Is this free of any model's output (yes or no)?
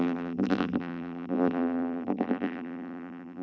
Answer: no